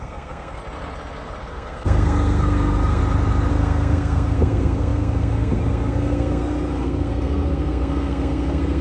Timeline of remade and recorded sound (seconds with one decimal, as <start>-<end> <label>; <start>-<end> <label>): 0.0-0.6 remade; 0.6-1.4 recorded; 1.4-3.0 remade; 3.0-3.5 recorded; 3.5-8.8 remade